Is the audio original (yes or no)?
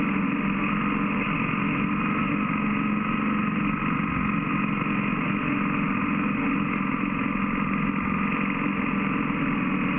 yes